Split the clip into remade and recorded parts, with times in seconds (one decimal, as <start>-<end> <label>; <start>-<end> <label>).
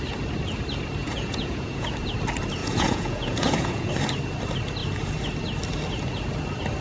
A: 0.0-1.0 recorded; 1.0-1.9 remade; 1.9-2.6 recorded; 2.6-3.9 remade; 3.9-6.8 recorded